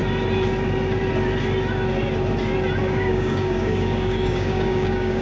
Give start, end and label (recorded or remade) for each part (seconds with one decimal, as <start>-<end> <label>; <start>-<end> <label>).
0.0-2.8 recorded; 2.8-5.2 remade